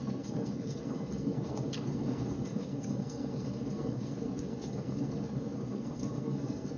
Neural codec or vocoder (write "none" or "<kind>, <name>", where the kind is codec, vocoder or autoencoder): codec, SNAC